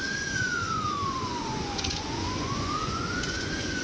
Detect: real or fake fake